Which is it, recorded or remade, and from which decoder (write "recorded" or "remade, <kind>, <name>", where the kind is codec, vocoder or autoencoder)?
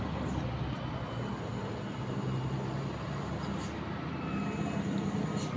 recorded